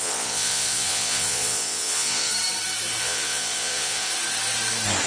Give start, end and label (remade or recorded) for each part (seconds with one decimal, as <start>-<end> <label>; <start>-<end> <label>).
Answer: 0.0-2.3 remade; 2.3-3.0 recorded; 3.0-4.1 remade; 4.1-5.1 recorded